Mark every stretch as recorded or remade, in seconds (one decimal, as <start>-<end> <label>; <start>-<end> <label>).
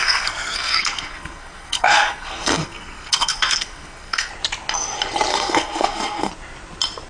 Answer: 0.0-4.3 remade; 4.3-5.3 recorded; 5.3-6.3 remade; 6.3-7.1 recorded